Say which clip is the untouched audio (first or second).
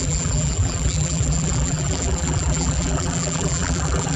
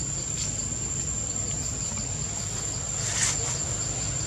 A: second